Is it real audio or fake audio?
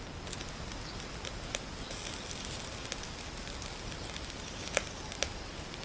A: real